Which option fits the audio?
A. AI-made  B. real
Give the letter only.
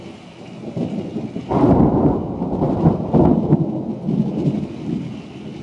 B